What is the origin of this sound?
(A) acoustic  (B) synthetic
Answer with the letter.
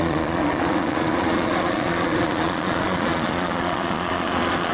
B